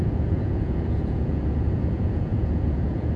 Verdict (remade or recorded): remade